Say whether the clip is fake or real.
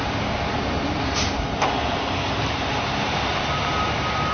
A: real